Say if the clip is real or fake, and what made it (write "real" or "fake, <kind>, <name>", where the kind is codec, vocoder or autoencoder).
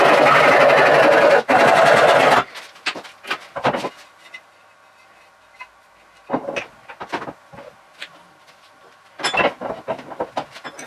real